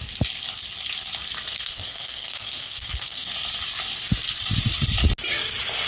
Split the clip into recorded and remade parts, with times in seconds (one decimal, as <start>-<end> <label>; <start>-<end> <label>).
0.0-1.5 recorded; 1.5-3.3 remade; 3.3-5.9 recorded